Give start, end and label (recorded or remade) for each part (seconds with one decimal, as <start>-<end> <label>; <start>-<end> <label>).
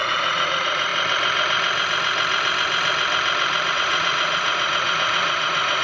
0.0-0.9 remade; 0.9-3.7 recorded; 3.7-5.8 remade